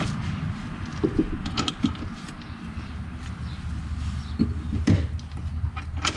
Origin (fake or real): real